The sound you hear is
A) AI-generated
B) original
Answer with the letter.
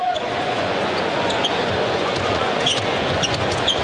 A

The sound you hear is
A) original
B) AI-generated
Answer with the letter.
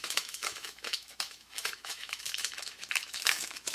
B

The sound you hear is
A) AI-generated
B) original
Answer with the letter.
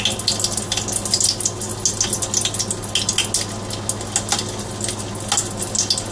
B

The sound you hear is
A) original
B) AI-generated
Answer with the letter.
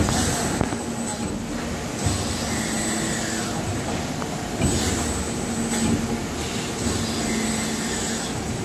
A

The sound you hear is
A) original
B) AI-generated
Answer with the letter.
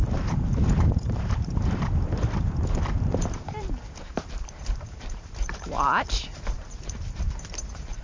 B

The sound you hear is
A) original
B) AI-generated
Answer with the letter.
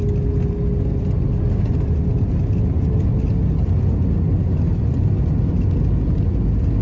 A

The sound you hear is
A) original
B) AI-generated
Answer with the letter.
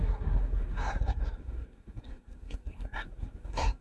B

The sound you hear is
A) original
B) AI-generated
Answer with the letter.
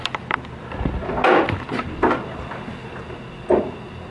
A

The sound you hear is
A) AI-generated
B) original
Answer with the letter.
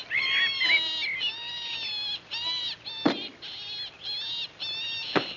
B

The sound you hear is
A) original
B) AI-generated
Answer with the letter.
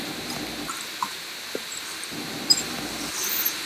A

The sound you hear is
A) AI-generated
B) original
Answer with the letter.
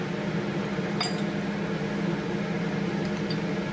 B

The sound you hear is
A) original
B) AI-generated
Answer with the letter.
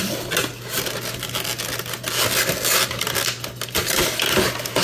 A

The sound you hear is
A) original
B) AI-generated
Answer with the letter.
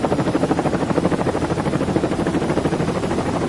B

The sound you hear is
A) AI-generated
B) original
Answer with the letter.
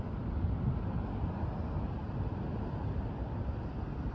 B